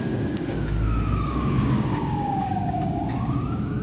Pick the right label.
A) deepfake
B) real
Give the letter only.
A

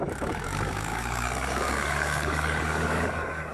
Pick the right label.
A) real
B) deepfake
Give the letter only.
B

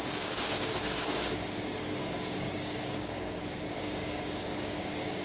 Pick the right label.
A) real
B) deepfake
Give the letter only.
B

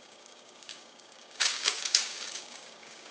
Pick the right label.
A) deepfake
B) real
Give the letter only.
A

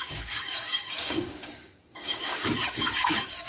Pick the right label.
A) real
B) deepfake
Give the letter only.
B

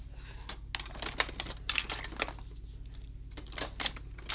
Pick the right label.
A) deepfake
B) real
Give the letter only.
B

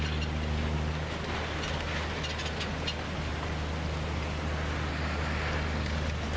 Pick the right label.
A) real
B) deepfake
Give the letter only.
A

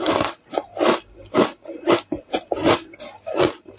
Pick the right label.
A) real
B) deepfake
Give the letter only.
A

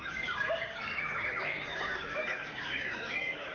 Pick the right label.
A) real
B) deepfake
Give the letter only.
B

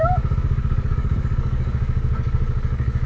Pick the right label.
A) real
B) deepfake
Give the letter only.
B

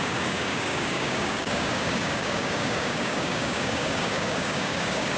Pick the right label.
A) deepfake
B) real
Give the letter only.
A